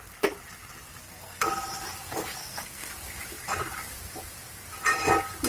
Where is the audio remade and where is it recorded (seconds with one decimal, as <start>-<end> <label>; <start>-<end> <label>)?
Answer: 0.0-1.0 recorded; 1.0-1.5 remade; 1.5-2.4 recorded; 2.4-2.9 remade; 2.9-5.5 recorded